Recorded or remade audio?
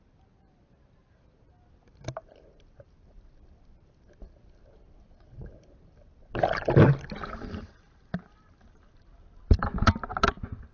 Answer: recorded